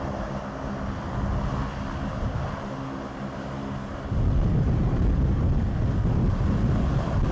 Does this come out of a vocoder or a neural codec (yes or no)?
no